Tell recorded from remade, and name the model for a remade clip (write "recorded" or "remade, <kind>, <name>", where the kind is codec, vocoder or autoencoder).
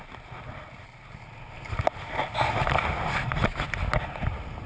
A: recorded